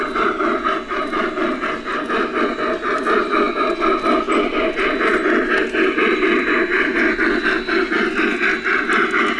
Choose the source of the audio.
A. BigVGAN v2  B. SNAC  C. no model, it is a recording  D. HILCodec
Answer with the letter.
C